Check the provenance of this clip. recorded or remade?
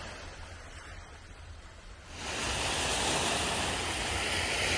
recorded